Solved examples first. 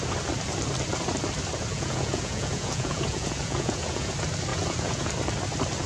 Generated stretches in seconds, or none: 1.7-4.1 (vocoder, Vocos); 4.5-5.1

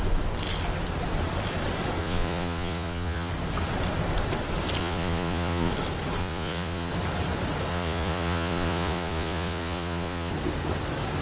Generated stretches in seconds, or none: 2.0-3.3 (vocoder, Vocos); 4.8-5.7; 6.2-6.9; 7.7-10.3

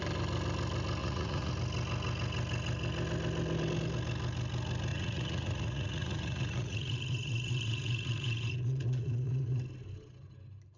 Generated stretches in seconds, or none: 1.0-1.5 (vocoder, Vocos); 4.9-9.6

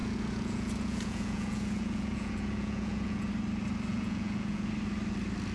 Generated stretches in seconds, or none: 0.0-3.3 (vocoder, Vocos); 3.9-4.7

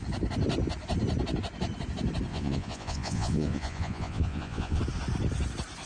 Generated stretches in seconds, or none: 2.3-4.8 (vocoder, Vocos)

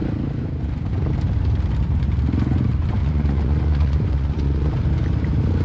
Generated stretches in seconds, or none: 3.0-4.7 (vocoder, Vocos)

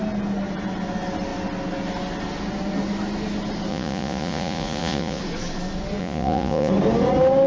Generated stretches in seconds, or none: 3.7-5.2 (vocoder, Vocos); 6.0-6.7

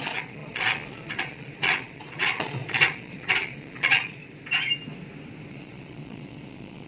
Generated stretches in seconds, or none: 0.0-4.2 (vocoder, Vocos); 5.5-6.9